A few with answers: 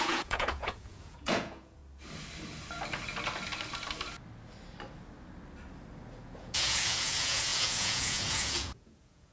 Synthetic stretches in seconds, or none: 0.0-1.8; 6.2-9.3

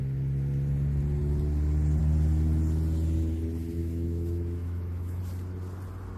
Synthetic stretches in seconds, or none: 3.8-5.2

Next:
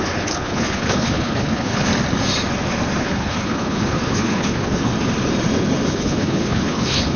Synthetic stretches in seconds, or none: 0.0-1.9; 3.0-4.9; 5.9-7.2